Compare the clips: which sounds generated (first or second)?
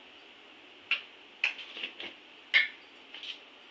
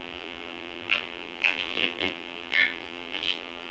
second